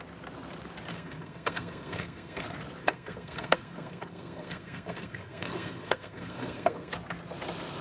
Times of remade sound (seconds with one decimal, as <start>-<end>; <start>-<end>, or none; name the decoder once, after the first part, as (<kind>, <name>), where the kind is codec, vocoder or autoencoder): 0.9-2.4 (codec, SNAC); 2.8-6.9